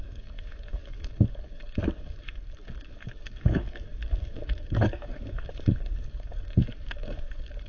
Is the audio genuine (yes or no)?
no